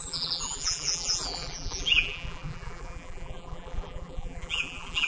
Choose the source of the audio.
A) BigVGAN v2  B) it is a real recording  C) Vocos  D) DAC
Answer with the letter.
A